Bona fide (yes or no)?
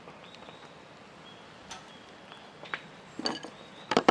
yes